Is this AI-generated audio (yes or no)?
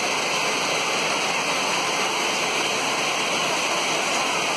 no